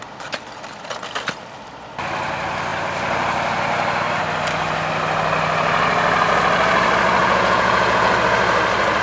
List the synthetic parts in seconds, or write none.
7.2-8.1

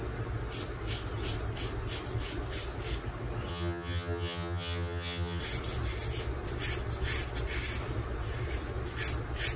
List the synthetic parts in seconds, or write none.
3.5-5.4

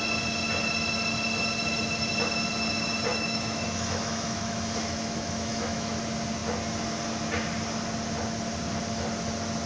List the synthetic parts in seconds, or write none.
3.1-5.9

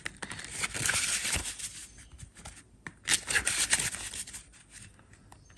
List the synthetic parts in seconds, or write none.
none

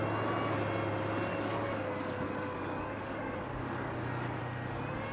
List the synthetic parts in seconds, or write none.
1.3-4.4